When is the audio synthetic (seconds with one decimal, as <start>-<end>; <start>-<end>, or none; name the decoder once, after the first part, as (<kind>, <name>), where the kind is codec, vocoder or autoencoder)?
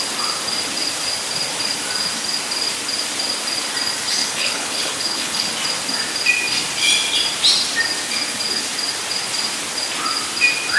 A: 4.2-5.5 (codec, HILCodec)